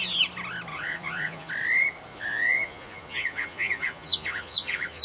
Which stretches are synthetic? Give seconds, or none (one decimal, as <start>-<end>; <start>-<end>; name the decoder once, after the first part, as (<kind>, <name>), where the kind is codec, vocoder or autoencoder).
0.7-1.5 (vocoder, Vocos); 2.1-5.0